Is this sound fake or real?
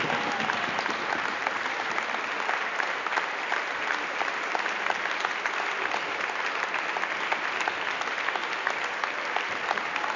real